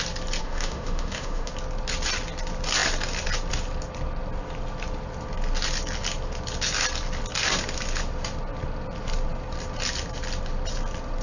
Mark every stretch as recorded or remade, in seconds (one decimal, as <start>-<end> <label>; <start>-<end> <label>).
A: 0.0-0.4 recorded; 0.4-1.5 remade; 1.5-11.2 recorded